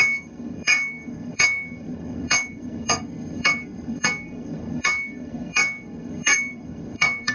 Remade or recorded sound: remade